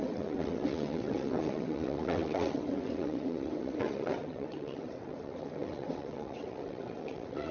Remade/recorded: remade